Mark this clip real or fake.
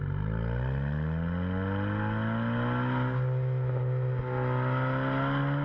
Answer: real